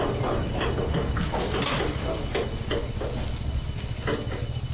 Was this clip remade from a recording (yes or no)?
no